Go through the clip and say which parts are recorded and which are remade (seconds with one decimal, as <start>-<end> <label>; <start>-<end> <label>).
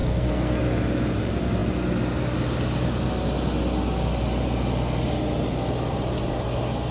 0.0-0.6 remade; 0.6-6.9 recorded